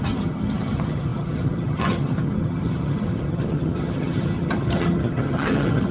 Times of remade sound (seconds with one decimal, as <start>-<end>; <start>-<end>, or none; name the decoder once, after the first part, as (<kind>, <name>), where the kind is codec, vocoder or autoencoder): 0.0-5.9 (vocoder, HiFi-GAN)